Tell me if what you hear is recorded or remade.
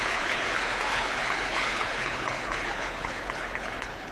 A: remade